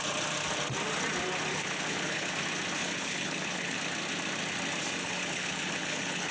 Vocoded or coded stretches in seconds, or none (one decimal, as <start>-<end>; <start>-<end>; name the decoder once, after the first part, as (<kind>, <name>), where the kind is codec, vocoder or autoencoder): 1.5-2.3 (codec, HILCodec); 2.8-3.8; 5.0-6.3